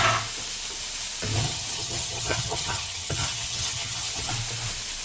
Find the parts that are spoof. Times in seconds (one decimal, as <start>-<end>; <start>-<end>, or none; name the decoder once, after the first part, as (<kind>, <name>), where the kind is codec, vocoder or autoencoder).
1.4-4.3 (vocoder, HiFi-GAN)